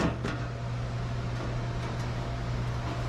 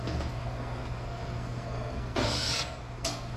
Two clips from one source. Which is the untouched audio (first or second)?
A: first